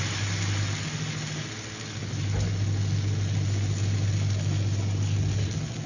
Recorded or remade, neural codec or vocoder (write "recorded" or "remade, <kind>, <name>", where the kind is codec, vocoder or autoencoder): recorded